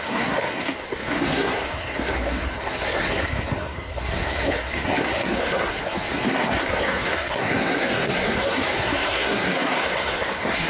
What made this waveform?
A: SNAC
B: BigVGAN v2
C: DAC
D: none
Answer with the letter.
A